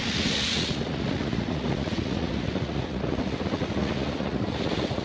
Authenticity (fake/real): fake